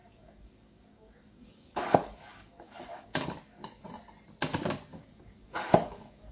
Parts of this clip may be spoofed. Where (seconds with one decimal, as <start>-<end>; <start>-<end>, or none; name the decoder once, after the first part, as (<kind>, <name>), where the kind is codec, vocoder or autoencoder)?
0.0-3.8 (codec, DAC); 4.9-6.3

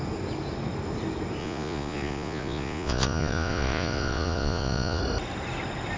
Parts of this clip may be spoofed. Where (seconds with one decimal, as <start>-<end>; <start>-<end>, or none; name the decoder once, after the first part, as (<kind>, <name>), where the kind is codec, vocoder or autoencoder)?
1.4-5.0 (vocoder, Vocos)

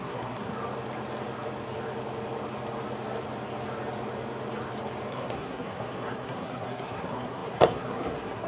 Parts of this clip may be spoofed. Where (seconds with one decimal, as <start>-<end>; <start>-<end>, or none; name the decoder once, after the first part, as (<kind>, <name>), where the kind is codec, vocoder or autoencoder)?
0.0-0.5 (codec, SNAC); 5.1-8.5

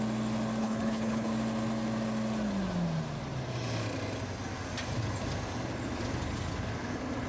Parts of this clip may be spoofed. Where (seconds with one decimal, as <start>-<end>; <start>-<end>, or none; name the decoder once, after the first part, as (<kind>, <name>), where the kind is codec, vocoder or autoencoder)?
0.6-1.3 (codec, HILCodec)

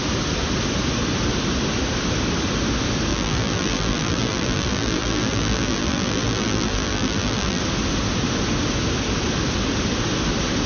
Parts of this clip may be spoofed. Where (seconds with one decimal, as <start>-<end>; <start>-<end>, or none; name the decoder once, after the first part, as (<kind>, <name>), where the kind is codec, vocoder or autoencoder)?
3.1-7.6 (vocoder, BigVGAN v2)

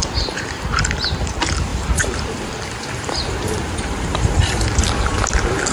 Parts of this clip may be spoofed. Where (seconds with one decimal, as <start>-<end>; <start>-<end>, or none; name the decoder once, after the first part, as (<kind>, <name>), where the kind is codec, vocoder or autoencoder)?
0.0-0.9 (vocoder, BigVGAN v2); 1.7-4.9